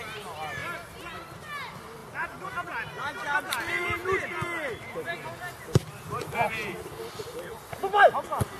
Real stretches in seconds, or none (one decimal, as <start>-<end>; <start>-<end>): 0.0-8.6